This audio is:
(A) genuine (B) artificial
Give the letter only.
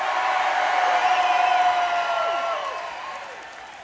A